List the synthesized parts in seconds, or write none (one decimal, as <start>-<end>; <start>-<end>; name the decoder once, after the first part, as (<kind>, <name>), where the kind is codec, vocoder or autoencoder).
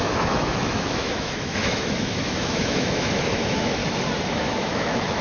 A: 0.0-3.8 (autoencoder, DAC-VAE); 4.3-5.2